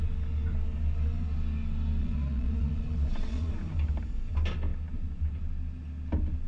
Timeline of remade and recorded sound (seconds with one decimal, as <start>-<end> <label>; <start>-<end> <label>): 0.0-2.0 recorded; 2.0-3.5 remade; 3.5-6.5 recorded